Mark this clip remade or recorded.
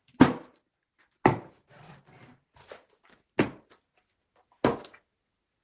recorded